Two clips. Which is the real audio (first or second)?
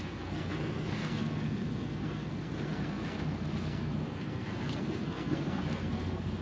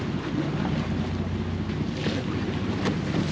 second